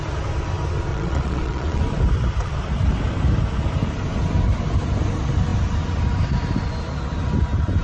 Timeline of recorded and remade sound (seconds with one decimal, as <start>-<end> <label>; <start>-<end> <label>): 0.0-0.9 recorded; 0.9-1.8 remade; 1.8-7.8 recorded